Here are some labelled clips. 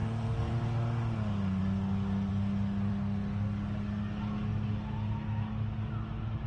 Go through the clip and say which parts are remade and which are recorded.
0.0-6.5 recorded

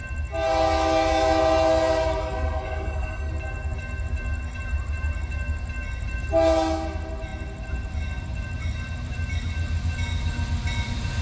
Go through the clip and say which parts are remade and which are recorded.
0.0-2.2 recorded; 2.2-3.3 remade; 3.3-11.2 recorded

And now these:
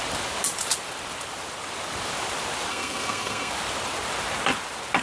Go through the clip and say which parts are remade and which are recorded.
0.0-2.7 recorded; 2.7-3.5 remade; 3.5-5.0 recorded

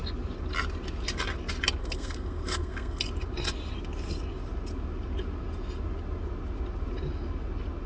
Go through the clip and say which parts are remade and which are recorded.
0.0-1.8 recorded; 1.8-3.0 remade; 3.0-7.9 recorded

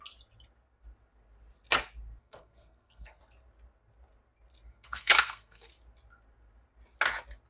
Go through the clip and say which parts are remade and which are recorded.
0.0-2.2 recorded; 2.2-3.2 remade; 3.2-4.7 recorded; 4.7-5.7 remade; 5.7-7.5 recorded